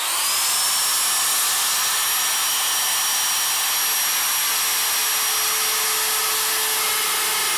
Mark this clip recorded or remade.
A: recorded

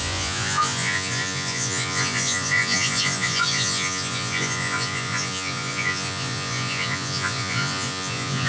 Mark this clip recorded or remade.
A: remade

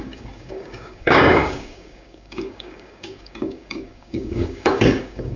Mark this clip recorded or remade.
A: remade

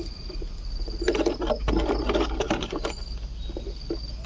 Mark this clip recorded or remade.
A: recorded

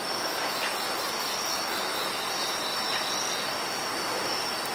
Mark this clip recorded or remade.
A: recorded